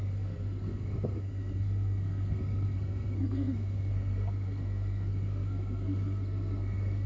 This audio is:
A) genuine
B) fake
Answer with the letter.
B